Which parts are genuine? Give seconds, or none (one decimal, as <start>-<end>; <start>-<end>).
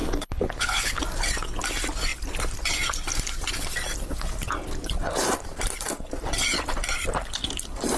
1.0-8.0